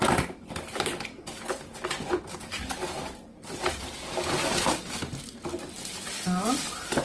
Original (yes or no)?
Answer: yes